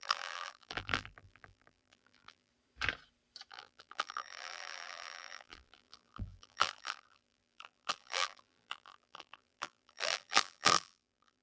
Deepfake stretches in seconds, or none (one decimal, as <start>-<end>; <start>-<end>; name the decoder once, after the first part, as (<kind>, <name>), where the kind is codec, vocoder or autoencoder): 0.0-2.5 (vocoder, BigVGAN v2); 3.5-11.4